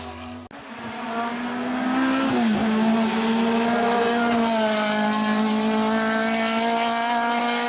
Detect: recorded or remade recorded